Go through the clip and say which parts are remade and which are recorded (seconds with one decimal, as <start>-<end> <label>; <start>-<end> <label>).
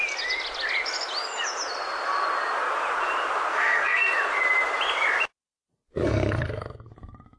0.0-3.5 recorded; 3.5-4.1 remade; 4.1-5.9 recorded; 5.9-6.9 remade; 6.9-7.4 recorded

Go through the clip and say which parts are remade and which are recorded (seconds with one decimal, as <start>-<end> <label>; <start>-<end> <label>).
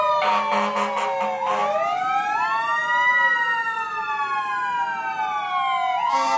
0.0-6.4 recorded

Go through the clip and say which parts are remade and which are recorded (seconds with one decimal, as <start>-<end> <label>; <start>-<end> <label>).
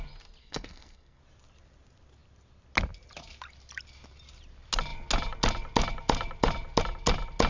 0.0-0.4 recorded; 0.4-1.2 remade; 1.2-7.5 recorded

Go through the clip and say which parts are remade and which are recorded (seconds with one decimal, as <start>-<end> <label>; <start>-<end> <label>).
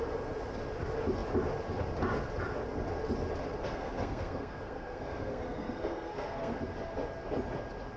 0.0-3.6 recorded; 3.6-6.6 remade; 6.6-8.0 recorded